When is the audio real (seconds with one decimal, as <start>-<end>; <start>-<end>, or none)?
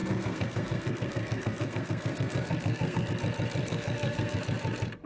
3.1-3.6; 4.4-5.1